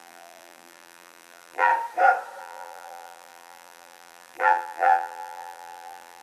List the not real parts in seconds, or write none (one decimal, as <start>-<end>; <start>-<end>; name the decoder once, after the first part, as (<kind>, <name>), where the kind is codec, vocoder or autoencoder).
0.0-1.7 (vocoder, BigVGAN v2); 2.4-6.2